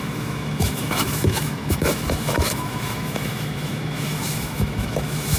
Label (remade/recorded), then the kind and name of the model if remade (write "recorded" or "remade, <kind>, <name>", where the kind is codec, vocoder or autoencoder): remade, autoencoder, DAC-VAE